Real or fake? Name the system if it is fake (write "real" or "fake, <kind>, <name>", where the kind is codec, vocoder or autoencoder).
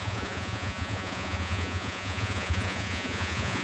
fake, vocoder, Vocos